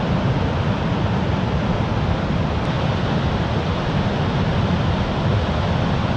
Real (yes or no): yes